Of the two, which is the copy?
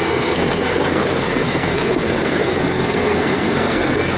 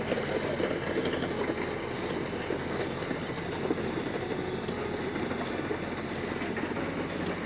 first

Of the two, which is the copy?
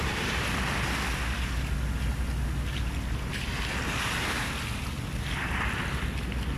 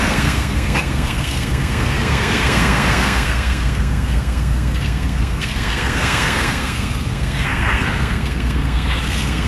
second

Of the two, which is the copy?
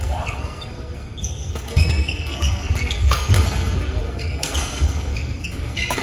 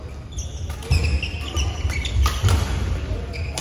first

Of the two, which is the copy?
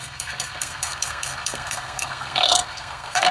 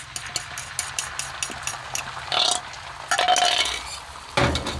first